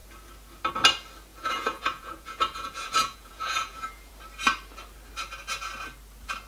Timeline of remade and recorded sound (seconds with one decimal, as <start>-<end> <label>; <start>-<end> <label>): 0.0-1.3 recorded; 1.3-4.1 remade; 4.1-6.5 recorded